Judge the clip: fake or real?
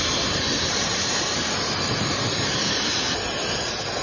real